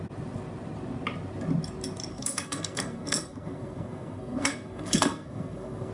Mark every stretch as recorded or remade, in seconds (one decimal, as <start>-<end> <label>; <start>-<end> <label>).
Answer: 0.0-2.1 recorded; 2.1-5.9 remade